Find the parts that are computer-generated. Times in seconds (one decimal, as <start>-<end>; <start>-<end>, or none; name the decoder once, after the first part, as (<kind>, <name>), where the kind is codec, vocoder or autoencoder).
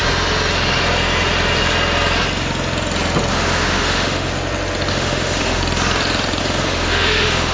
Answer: 3.3-4.3 (autoencoder, DAC-VAE); 4.9-5.6; 6.4-7.5